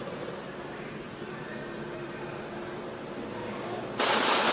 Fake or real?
real